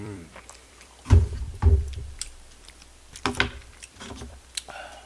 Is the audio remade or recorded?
remade